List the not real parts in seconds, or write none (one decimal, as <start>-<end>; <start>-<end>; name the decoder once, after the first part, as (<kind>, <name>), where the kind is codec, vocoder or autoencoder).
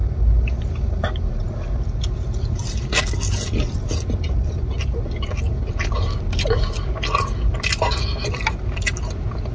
none